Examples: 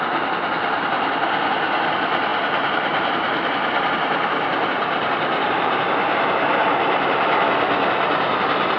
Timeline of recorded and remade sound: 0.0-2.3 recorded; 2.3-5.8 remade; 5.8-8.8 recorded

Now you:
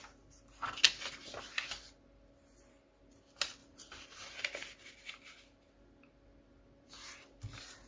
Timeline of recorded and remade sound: 0.0-3.6 recorded; 3.6-4.4 remade; 4.4-7.9 recorded

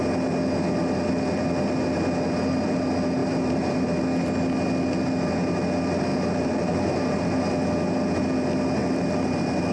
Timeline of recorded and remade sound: 0.0-3.2 recorded; 3.2-4.0 remade; 4.0-6.1 recorded; 6.1-7.4 remade; 7.4-8.8 recorded; 8.8-9.7 remade

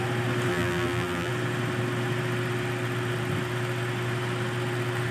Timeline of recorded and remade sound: 0.0-0.5 recorded; 0.5-1.3 remade; 1.3-5.1 recorded